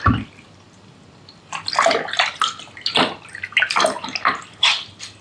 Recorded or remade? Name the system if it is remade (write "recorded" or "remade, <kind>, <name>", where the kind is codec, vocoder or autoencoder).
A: recorded